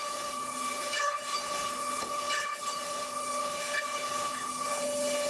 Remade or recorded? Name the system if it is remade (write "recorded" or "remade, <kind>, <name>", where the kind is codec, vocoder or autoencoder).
remade, codec, HILCodec